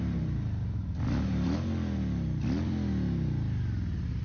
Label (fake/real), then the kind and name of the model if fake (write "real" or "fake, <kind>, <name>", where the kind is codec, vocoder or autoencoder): real